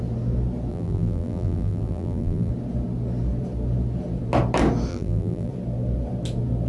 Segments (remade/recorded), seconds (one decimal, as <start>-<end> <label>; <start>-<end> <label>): 0.0-0.7 recorded; 0.7-2.5 remade; 2.5-4.9 recorded; 4.9-5.5 remade; 5.5-6.7 recorded